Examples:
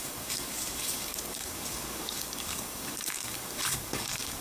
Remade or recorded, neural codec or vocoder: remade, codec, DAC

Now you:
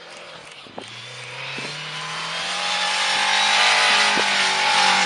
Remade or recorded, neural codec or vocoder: recorded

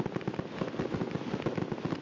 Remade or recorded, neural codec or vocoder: recorded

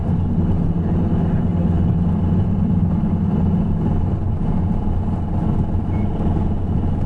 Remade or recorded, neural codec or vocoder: recorded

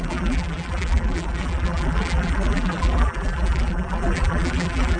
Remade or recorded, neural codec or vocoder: remade, vocoder, BigVGAN v2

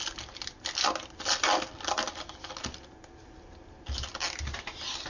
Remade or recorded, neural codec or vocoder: recorded